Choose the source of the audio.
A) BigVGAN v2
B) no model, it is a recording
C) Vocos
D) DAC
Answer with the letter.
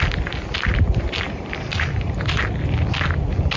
B